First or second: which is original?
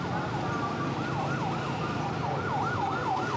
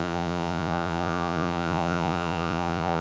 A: first